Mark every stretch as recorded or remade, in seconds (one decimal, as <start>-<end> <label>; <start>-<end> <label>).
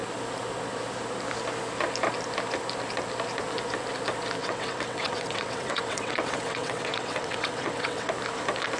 0.0-4.4 recorded; 4.4-8.1 remade; 8.1-8.8 recorded